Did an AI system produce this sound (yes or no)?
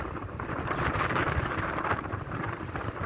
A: no